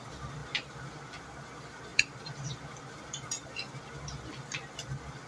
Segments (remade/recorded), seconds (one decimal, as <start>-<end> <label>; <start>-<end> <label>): 0.0-0.4 recorded; 0.4-1.2 remade; 1.2-1.9 recorded; 1.9-3.5 remade; 3.5-5.3 recorded